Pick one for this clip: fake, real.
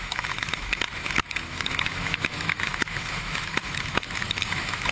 fake